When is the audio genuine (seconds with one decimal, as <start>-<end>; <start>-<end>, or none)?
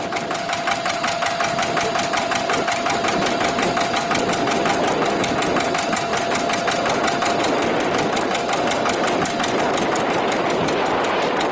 0.0-11.5